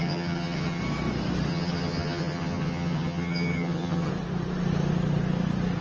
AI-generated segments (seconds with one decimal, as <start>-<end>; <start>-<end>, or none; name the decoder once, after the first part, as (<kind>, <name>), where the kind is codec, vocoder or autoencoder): 0.0-0.8 (vocoder, HiFi-GAN); 1.5-4.1